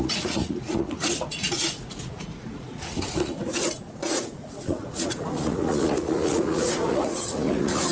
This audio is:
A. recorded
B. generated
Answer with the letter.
B